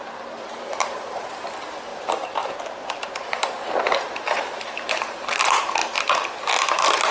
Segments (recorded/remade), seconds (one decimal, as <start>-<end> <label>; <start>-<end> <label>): 0.0-5.8 remade; 5.8-6.3 recorded; 6.3-7.1 remade